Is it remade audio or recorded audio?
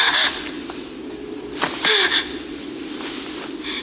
recorded